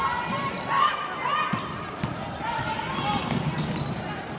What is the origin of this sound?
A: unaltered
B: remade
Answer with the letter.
A